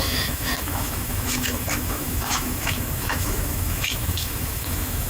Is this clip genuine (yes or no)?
no